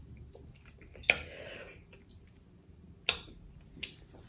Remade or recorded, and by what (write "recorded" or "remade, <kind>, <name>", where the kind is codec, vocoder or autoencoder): recorded